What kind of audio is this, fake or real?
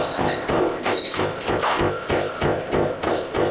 fake